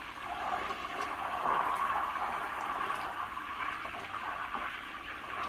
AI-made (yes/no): no